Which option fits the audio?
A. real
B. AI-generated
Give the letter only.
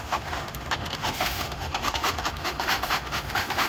B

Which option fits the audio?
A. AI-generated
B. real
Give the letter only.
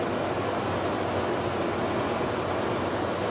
B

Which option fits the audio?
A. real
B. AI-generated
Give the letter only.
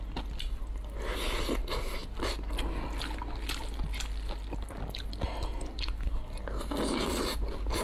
A